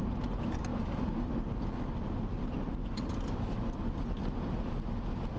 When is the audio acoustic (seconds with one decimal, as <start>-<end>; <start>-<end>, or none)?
0.0-5.4